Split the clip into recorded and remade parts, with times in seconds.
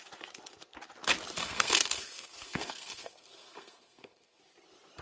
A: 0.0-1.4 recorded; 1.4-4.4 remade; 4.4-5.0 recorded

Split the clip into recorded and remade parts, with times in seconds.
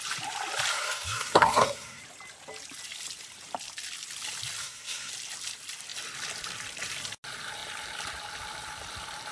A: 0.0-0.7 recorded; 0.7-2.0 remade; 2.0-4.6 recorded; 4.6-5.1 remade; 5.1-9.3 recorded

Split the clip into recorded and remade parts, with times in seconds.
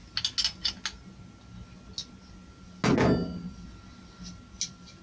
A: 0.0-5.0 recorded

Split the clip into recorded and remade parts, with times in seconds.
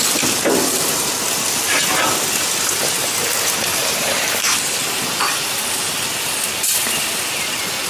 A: 0.0-7.9 recorded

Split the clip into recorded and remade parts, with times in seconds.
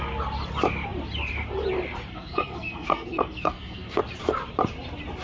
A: 0.0-2.1 recorded; 2.1-4.0 remade; 4.0-5.2 recorded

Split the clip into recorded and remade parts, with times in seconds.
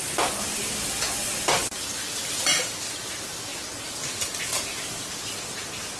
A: 0.0-6.0 recorded